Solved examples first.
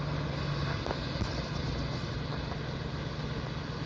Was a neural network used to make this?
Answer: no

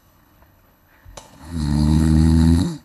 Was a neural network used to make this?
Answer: yes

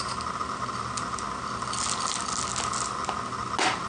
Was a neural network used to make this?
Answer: no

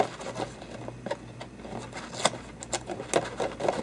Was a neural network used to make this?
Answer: no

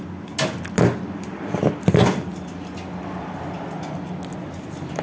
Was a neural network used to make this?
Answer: no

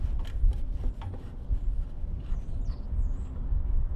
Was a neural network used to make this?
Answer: no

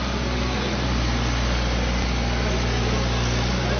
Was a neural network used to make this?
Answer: no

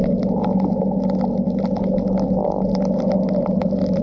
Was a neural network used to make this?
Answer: no